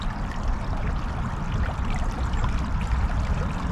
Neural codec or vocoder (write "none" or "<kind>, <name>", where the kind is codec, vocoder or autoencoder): none